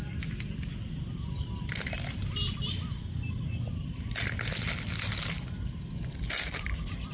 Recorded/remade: recorded